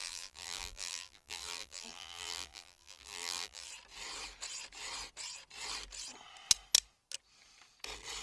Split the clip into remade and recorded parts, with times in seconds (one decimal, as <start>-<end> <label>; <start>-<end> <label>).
0.0-3.7 remade; 3.7-8.2 recorded